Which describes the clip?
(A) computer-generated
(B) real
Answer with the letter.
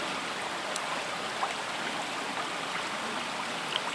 B